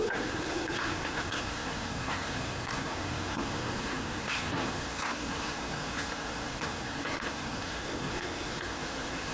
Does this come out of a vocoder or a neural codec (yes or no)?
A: yes